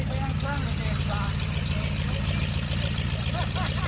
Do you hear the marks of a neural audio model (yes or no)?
no